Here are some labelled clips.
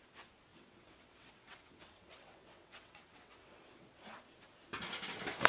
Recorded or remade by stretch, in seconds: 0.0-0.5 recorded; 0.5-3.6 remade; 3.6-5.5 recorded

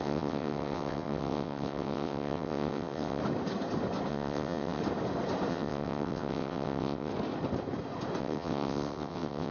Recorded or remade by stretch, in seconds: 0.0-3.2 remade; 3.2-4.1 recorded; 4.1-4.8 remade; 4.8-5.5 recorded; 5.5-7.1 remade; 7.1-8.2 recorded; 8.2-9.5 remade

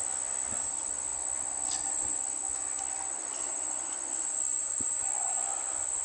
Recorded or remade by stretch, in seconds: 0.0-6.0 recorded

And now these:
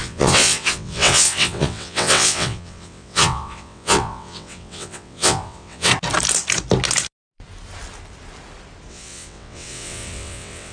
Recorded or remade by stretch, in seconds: 0.0-5.9 remade; 5.9-8.9 recorded; 8.9-10.7 remade

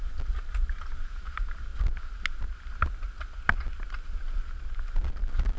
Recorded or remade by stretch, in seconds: 0.0-5.6 recorded

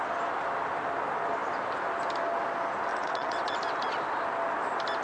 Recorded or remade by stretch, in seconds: 0.0-2.9 recorded; 2.9-3.6 remade; 3.6-5.0 recorded